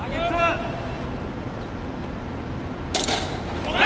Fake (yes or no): no